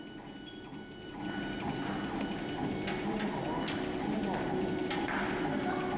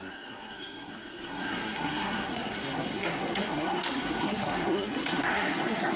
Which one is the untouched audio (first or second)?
first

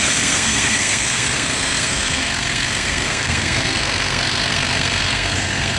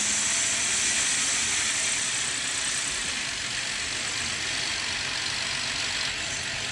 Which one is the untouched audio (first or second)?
second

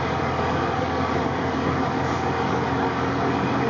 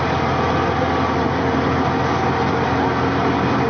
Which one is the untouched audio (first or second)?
second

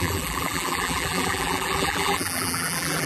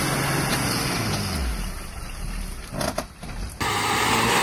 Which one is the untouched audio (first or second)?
second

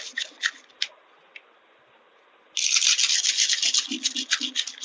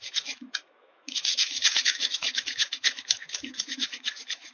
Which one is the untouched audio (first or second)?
first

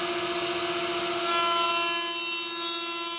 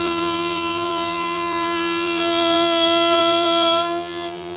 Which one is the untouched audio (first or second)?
first